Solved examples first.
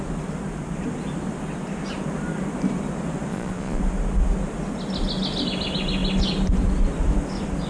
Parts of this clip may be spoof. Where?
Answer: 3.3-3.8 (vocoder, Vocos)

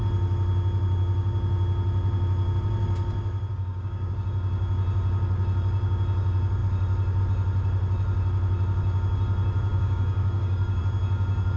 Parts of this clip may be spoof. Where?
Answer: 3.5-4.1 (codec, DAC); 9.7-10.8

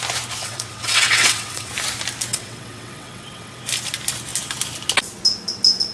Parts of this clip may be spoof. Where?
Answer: 0.4-1.7 (vocoder, WaveNeXt); 2.3-3.6

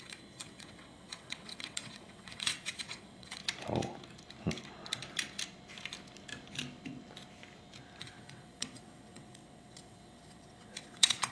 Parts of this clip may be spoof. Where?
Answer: 0.0-3.4 (vocoder, WaveNeXt); 8.0-11.3